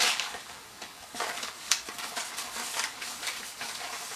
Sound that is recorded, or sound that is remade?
remade